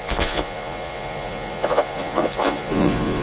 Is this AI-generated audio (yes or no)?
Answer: yes